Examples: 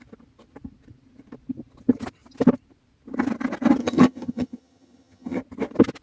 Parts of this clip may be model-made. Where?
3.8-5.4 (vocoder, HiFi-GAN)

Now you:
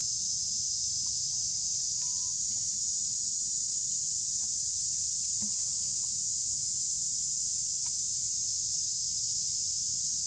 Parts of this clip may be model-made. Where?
none

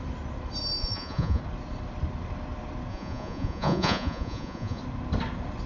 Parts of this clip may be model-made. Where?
0.8-1.4 (vocoder, Vocos); 2.9-4.8